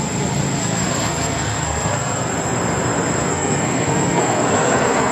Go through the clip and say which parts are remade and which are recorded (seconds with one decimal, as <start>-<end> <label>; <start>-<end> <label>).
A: 0.0-0.6 recorded; 0.6-2.3 remade; 2.3-3.2 recorded; 3.2-5.1 remade